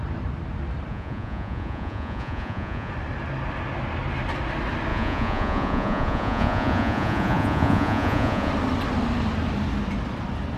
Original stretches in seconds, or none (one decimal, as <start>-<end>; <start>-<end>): 0.0-0.9; 2.9-4.9; 8.5-10.6